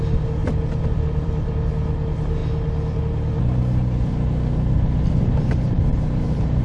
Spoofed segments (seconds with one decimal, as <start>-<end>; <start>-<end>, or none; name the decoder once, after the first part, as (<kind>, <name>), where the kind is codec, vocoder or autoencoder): 0.4-1.7 (vocoder, BigVGAN v2)